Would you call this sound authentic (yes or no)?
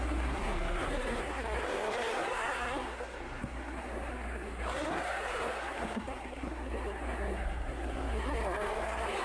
no